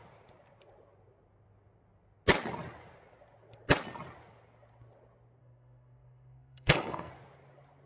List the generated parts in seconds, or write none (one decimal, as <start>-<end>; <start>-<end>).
5.4-7.1